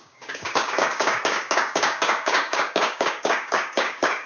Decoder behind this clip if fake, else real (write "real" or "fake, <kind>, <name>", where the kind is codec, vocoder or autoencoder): fake, codec, DAC